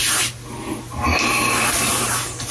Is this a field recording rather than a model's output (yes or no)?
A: yes